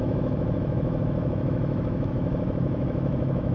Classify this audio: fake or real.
fake